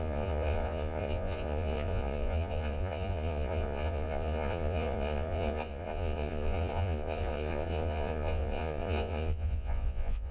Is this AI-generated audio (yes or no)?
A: yes